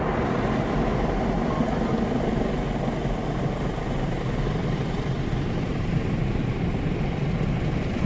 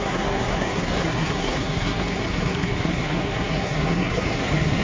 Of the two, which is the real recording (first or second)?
first